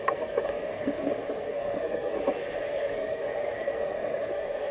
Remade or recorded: remade